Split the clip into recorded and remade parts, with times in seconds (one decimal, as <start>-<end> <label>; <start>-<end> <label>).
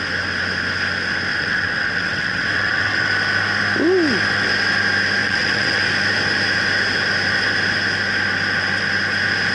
0.0-1.3 recorded; 1.3-3.1 remade; 3.1-5.2 recorded; 5.2-5.8 remade; 5.8-9.5 recorded